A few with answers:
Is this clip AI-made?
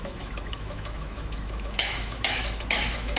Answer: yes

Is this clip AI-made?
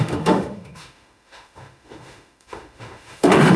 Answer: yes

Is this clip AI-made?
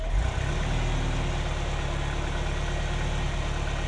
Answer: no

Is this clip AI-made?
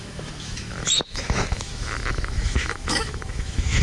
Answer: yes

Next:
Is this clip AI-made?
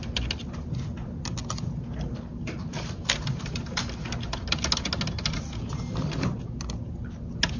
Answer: no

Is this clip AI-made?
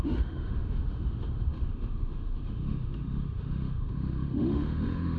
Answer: yes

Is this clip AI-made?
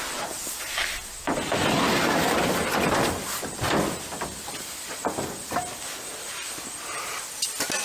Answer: no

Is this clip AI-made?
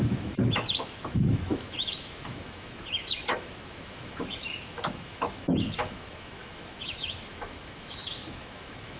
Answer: yes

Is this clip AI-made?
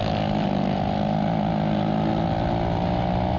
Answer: no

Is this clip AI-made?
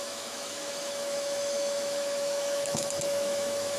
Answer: yes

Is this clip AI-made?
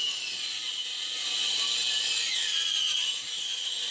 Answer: no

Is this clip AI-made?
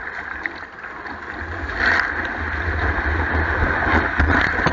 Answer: no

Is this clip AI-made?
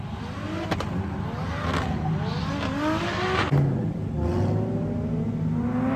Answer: no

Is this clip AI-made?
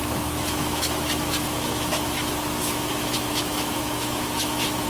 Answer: yes